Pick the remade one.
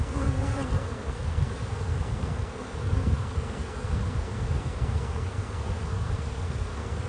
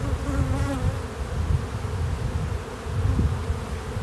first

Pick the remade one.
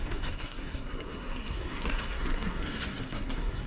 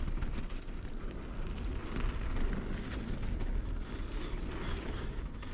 first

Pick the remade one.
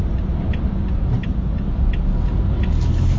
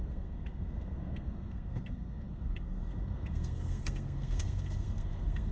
second